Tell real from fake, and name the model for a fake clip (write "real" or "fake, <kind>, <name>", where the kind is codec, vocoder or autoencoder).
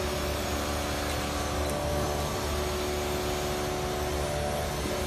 real